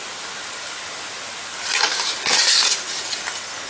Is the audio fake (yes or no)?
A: no